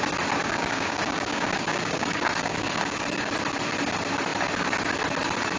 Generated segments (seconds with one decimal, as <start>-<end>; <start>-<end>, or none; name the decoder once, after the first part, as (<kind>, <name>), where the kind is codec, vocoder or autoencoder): 0.4-3.3 (codec, DAC)